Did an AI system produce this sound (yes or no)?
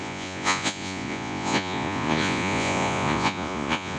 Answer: yes